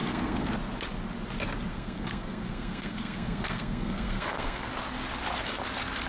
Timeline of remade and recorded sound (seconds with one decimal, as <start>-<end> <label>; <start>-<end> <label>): 0.0-0.5 remade; 0.5-1.7 recorded; 1.7-4.7 remade; 4.7-6.1 recorded